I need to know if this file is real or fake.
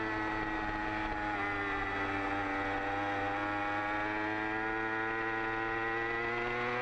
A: real